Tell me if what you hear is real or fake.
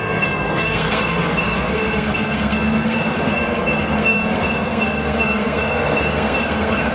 fake